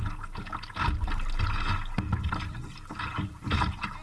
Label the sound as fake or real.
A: real